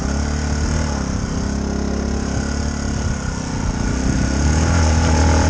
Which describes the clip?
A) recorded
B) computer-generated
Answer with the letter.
A